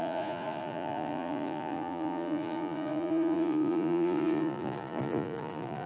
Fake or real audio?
fake